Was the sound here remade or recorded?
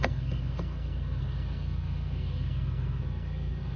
remade